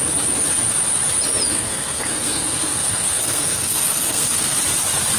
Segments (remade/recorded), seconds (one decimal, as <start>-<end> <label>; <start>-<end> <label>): 0.0-1.5 recorded; 1.5-4.6 remade; 4.6-5.2 recorded